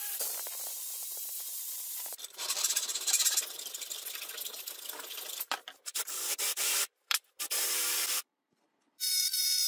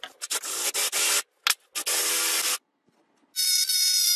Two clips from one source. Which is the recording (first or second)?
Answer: second